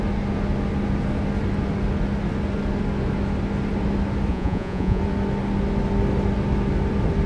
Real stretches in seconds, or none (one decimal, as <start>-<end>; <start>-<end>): 0.0-4.3; 5.0-7.3